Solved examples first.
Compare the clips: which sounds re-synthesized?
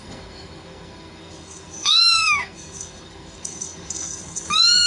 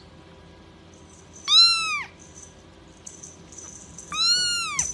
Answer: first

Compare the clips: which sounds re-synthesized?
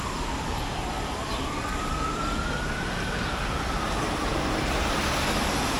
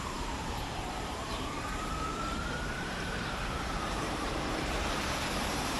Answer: second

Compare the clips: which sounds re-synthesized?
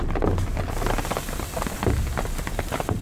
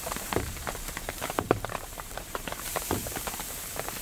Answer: second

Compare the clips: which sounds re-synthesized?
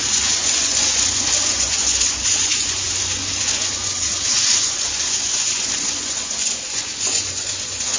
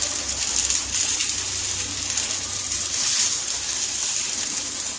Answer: first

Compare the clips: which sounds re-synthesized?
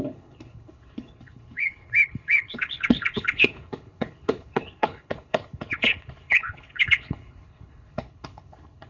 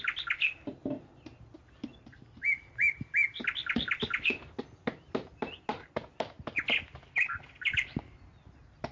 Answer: first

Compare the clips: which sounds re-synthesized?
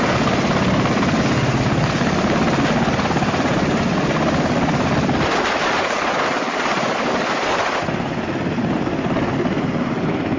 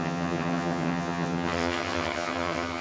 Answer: second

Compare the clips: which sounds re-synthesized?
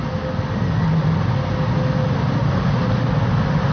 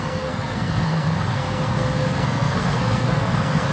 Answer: second